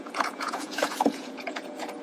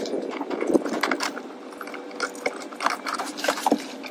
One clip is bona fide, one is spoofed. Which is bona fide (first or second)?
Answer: second